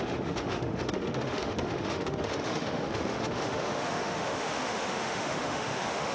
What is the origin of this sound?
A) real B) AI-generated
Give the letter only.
B